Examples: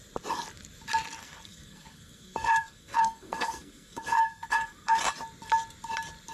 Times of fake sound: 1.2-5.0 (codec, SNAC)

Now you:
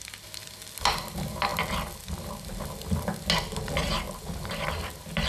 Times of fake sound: none

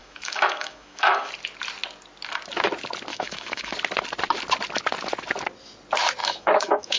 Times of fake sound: 0.0-1.3 (autoencoder, DAC-VAE); 3.1-3.7; 6.2-7.0

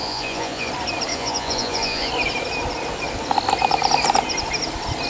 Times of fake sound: 0.0-0.7 (vocoder, Vocos); 1.1-2.1

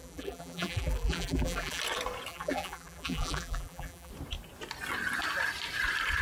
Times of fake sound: 0.0-1.8 (vocoder, BigVGAN v2); 2.3-4.1

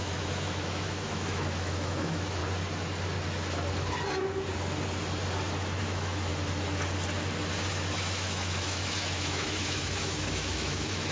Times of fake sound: 0.0-2.4 (autoencoder, DAC-VAE); 5.8-6.3; 7.7-11.1

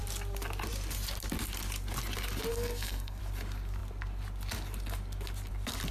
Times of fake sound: 2.5-3.2 (codec, SNAC)

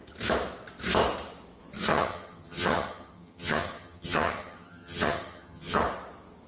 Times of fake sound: 1.9-5.8 (vocoder, HiFi-GAN)